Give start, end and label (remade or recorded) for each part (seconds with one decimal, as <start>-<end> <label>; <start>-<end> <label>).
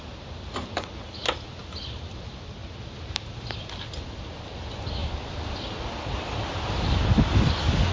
0.0-7.9 recorded